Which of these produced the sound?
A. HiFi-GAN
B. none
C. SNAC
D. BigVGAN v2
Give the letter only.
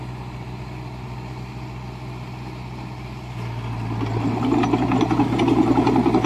B